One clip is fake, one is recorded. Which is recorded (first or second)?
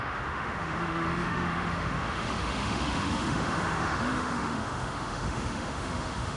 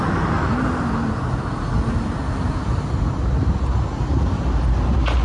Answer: second